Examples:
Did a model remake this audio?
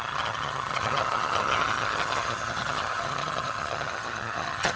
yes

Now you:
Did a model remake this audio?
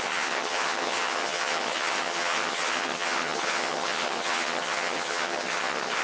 yes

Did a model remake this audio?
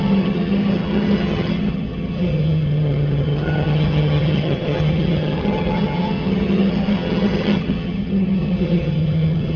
yes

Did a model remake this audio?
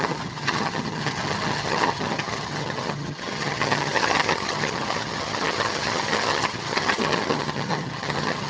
yes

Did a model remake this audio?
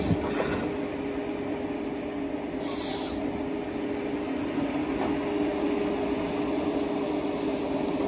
no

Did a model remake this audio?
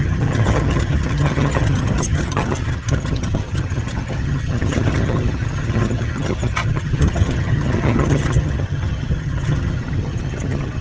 yes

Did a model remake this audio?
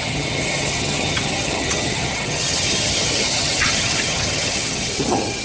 yes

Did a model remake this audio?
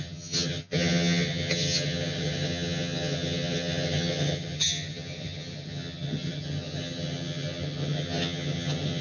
yes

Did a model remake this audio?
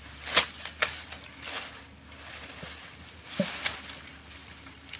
no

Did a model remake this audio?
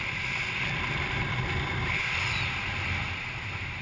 no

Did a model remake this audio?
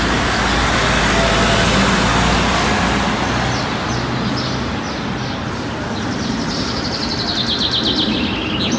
no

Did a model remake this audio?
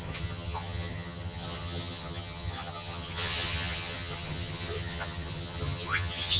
yes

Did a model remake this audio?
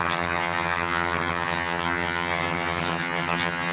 yes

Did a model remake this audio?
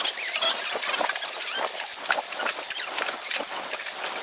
no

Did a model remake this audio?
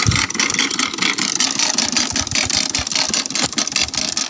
no